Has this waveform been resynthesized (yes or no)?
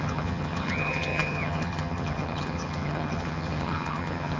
yes